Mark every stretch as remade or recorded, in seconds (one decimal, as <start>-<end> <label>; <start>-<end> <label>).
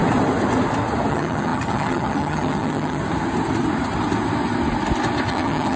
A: 0.0-1.1 recorded; 1.1-3.0 remade; 3.0-5.3 recorded; 5.3-5.8 remade